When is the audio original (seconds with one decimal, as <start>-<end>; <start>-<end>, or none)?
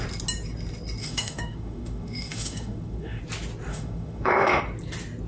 0.0-1.0; 3.2-3.7; 4.6-5.3